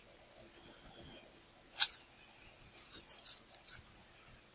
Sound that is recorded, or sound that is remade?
recorded